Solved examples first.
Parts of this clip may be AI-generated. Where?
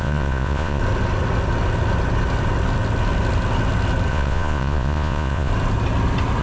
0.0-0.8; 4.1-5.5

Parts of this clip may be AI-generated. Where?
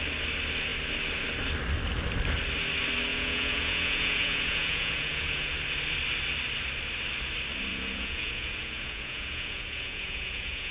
3.1-5.5; 7.7-10.7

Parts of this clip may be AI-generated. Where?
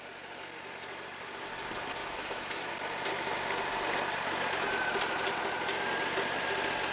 2.0-2.7